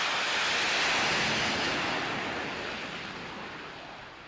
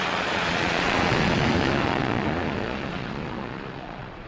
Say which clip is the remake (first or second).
second